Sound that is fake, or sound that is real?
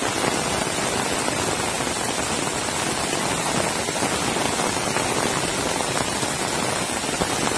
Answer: real